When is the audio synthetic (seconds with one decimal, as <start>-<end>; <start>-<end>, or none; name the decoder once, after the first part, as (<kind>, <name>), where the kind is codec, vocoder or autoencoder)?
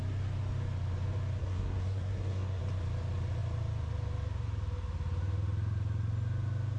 1.4-2.6 (codec, SNAC)